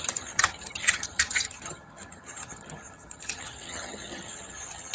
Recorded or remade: remade